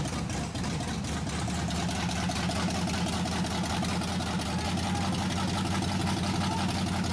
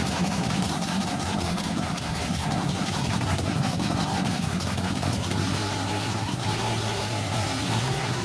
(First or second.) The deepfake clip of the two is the second